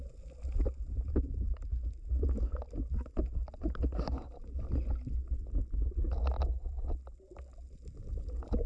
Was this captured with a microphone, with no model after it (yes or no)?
yes